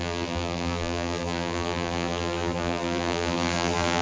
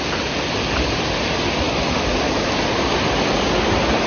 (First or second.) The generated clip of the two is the first